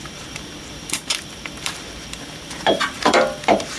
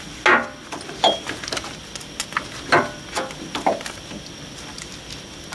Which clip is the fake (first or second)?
first